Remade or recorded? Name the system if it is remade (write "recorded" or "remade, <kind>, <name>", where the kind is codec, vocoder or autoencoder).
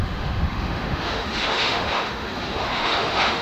remade, autoencoder, DAC-VAE